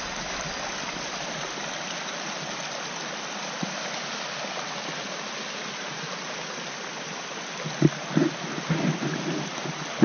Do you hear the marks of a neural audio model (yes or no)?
no